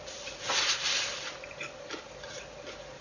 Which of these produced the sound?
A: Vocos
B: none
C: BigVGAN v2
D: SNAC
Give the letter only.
B